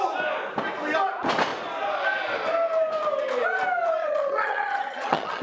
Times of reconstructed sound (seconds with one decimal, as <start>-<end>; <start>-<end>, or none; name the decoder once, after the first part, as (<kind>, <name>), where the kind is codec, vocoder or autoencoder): 4.0-5.4 (vocoder, HiFi-GAN)